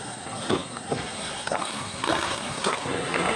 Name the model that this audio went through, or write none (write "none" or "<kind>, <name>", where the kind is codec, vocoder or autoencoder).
codec, SNAC